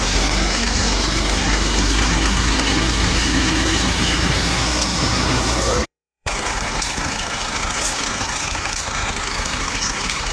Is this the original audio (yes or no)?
no